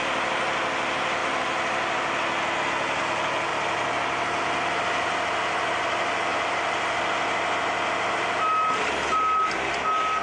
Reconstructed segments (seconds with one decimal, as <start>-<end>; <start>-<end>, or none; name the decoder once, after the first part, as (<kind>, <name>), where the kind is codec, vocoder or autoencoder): none